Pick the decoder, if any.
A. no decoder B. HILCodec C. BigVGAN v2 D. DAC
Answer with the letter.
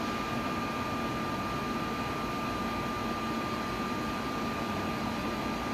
A